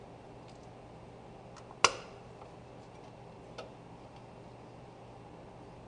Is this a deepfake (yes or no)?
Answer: no